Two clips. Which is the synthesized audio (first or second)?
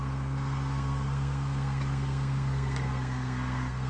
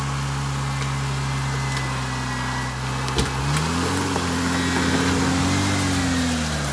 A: first